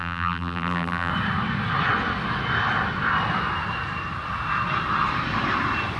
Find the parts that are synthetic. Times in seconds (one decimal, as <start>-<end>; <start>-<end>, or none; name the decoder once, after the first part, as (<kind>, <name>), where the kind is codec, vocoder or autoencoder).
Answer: 0.0-1.1 (vocoder, BigVGAN v2)